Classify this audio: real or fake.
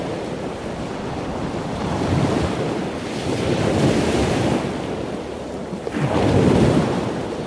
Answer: real